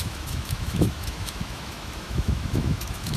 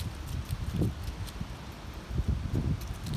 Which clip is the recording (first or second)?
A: second